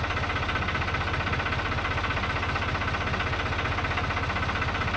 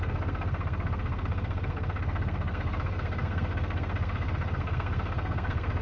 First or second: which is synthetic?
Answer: second